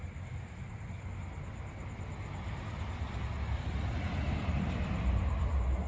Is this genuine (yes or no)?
yes